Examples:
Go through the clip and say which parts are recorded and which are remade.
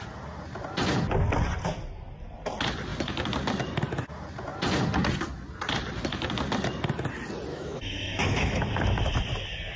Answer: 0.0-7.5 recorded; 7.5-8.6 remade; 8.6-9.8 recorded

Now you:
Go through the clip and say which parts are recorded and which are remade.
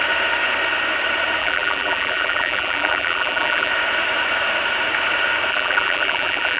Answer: 0.0-1.4 recorded; 1.4-3.7 remade; 3.7-5.5 recorded; 5.5-6.6 remade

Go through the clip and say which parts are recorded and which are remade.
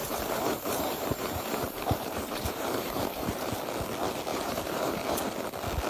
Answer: 0.0-3.5 remade; 3.5-4.3 recorded; 4.3-5.0 remade; 5.0-5.9 recorded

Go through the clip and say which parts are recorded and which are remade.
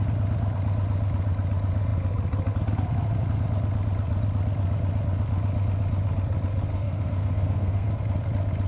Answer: 0.0-6.7 recorded; 6.7-7.9 remade; 7.9-8.7 recorded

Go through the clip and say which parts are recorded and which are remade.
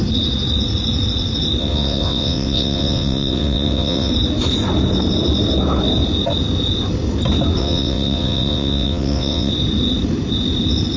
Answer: 0.0-1.6 recorded; 1.6-4.1 remade; 4.1-7.6 recorded; 7.6-9.5 remade; 9.5-11.0 recorded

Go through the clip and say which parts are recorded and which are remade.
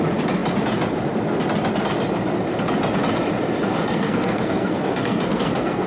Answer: 0.0-3.8 recorded; 3.8-5.9 remade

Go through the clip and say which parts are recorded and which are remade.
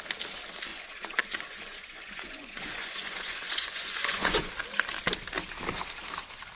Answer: 0.0-0.7 recorded; 0.7-4.5 remade; 4.5-6.6 recorded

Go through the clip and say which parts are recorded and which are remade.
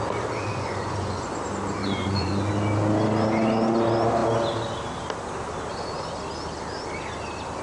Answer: 0.0-0.4 recorded; 0.4-1.3 remade; 1.3-1.8 recorded; 1.8-2.5 remade; 2.5-7.6 recorded